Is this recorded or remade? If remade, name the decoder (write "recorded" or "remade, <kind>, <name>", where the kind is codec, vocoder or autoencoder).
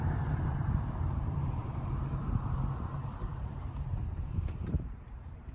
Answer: remade, vocoder, BigVGAN v2